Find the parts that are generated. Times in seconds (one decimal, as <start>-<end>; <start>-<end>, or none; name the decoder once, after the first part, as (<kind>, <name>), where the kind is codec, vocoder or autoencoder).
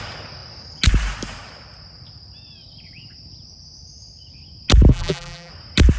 4.9-5.5 (vocoder, BigVGAN v2)